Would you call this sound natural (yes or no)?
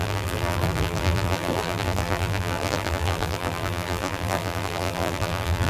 no